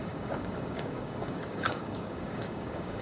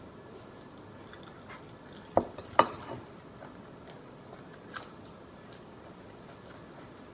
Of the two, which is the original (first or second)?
second